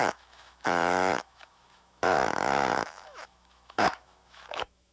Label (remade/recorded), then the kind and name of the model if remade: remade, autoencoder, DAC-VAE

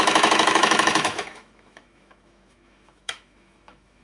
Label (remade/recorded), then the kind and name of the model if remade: remade, autoencoder, DAC-VAE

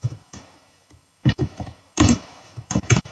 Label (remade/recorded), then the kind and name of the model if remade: remade, autoencoder, DAC-VAE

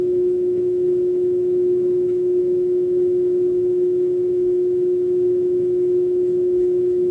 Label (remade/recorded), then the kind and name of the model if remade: remade, autoencoder, DAC-VAE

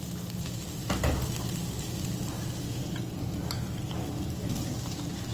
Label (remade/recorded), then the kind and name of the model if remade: recorded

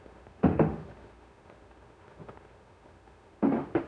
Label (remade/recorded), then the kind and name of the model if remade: remade, autoencoder, DAC-VAE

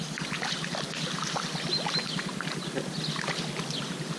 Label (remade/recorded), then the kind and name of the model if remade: recorded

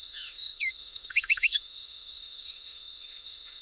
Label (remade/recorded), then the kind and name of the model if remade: remade, autoencoder, DAC-VAE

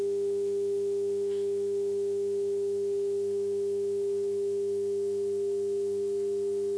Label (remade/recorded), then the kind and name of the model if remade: remade, autoencoder, DAC-VAE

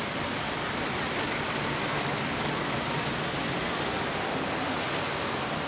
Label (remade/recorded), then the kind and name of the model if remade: recorded